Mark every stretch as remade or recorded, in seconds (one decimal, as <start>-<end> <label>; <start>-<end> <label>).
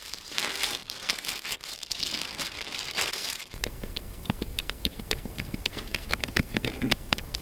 0.0-7.4 remade